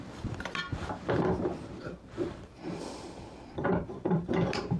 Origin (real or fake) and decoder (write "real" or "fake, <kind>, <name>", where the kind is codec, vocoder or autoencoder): fake, vocoder, BigVGAN v2